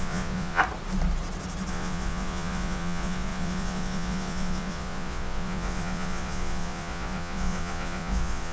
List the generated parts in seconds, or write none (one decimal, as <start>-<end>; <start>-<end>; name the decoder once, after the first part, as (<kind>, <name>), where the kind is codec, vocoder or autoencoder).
0.0-0.6 (vocoder, Vocos); 1.7-8.5